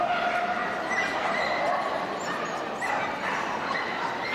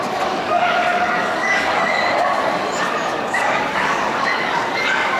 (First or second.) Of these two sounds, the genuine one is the first